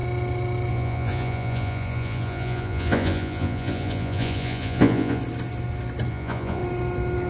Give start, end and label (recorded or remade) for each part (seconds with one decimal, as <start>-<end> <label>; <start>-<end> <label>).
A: 0.0-0.7 recorded; 0.7-5.2 remade; 5.2-6.1 recorded; 6.1-6.6 remade; 6.6-7.3 recorded